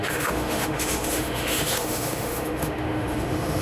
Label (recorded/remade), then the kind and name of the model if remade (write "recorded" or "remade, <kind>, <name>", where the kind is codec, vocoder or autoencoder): remade, autoencoder, DAC-VAE